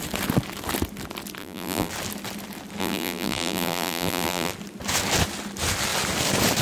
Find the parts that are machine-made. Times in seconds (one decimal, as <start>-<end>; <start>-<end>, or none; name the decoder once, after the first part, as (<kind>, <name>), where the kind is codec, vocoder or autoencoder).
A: 1.4-1.9 (vocoder, BigVGAN v2); 2.8-4.5